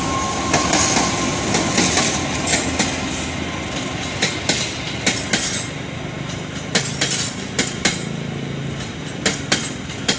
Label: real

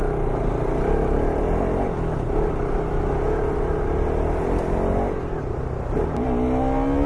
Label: real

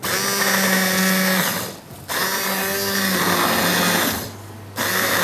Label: real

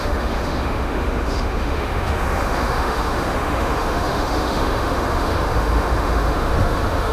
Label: fake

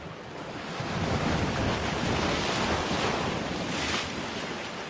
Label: real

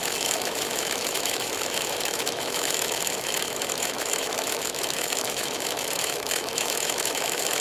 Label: fake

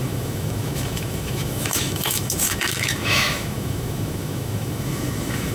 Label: fake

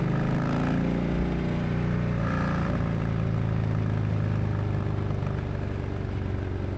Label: real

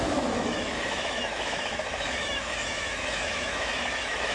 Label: fake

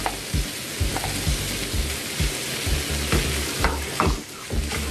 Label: real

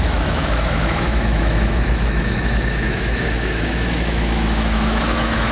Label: fake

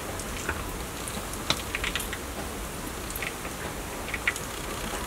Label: real